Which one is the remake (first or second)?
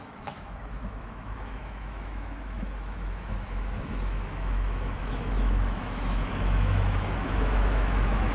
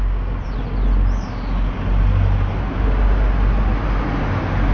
first